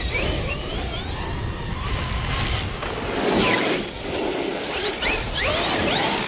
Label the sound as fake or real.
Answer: real